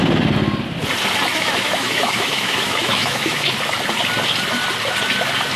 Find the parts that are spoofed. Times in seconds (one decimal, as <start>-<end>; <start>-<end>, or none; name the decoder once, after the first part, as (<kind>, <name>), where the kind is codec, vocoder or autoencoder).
1.3-3.5 (autoencoder, DAC-VAE)